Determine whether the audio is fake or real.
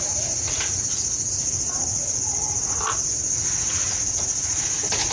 fake